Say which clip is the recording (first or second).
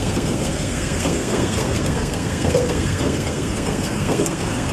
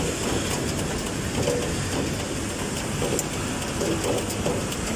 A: second